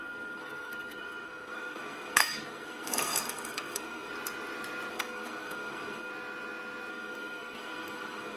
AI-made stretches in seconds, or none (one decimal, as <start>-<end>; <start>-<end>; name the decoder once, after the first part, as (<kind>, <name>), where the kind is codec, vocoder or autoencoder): 0.0-4.1 (codec, SNAC); 4.9-6.1; 6.9-8.4